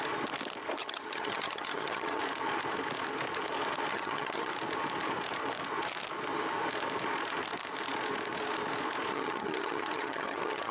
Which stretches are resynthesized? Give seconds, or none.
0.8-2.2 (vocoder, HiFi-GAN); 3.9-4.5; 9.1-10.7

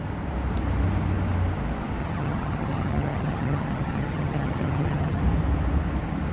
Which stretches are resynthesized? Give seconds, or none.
2.0-5.2 (vocoder, HiFi-GAN)

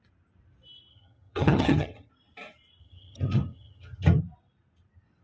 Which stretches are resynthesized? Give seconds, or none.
0.9-2.1 (vocoder, HiFi-GAN); 2.8-4.2

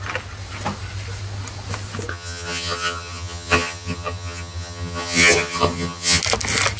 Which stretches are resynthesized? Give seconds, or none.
2.1-6.2 (vocoder, HiFi-GAN)